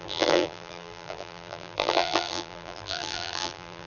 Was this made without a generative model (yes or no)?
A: no